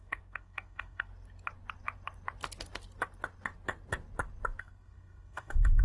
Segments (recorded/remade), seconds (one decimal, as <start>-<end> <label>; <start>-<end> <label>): 0.0-1.1 remade; 1.1-4.6 recorded; 4.6-5.8 remade